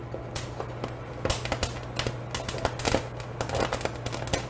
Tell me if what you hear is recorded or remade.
recorded